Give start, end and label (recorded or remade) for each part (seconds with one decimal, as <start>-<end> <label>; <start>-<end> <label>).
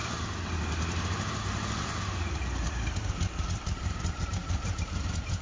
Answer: 0.0-1.8 recorded; 1.8-5.4 remade